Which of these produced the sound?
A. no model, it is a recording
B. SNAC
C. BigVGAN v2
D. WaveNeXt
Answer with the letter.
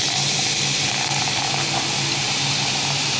A